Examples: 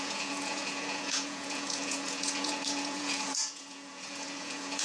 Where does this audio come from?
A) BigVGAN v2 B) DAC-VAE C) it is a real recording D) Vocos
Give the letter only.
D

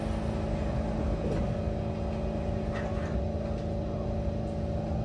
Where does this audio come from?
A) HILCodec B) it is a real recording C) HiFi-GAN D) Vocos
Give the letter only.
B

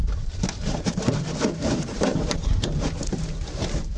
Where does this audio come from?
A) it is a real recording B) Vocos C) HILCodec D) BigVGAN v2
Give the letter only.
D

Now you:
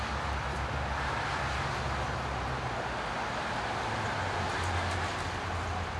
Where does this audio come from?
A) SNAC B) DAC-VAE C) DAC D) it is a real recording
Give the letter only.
D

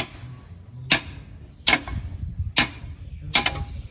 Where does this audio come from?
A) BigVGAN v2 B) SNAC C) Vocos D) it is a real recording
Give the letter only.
D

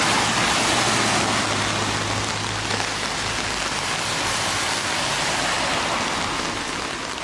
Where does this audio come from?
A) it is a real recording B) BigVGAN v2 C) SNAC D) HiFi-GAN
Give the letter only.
A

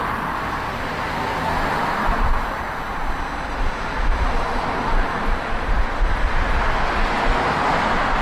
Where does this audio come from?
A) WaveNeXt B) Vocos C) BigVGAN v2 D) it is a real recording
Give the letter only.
D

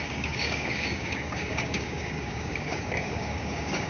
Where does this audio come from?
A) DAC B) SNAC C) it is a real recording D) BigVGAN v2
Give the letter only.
A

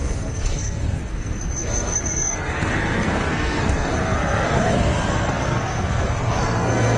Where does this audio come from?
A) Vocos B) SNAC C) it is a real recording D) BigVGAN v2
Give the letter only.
B